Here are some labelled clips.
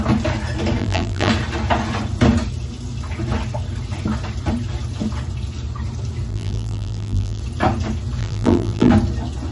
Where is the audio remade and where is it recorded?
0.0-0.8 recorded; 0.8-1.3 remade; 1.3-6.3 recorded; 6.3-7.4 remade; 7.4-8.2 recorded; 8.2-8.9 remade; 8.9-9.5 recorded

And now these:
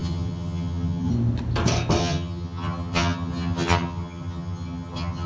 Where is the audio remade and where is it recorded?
0.0-1.1 remade; 1.1-2.0 recorded; 2.0-5.3 remade

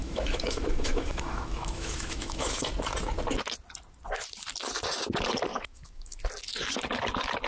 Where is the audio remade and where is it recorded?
0.0-2.6 remade; 2.6-5.5 recorded; 5.5-6.2 remade; 6.2-7.5 recorded

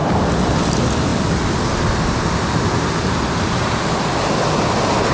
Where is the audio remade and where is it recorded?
0.0-5.1 recorded

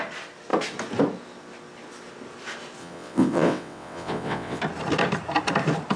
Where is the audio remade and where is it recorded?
0.0-2.8 recorded; 2.8-4.6 remade; 4.6-6.0 recorded

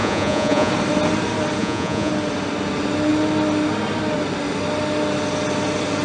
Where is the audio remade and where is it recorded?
0.0-0.7 remade; 0.7-1.6 recorded; 1.6-2.1 remade; 2.1-6.0 recorded

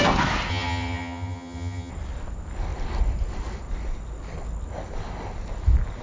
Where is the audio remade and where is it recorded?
0.0-0.5 recorded; 0.5-1.9 remade; 1.9-6.0 recorded

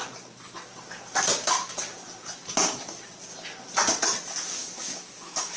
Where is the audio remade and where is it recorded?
0.0-4.6 recorded; 4.6-5.6 remade